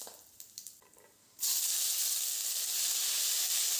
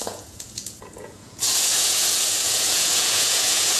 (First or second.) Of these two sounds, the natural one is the first